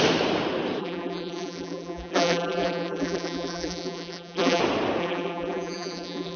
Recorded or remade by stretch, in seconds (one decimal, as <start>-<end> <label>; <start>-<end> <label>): 0.0-0.8 recorded; 0.8-4.6 remade; 4.6-5.0 recorded; 5.0-6.4 remade